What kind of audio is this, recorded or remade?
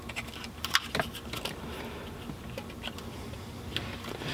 recorded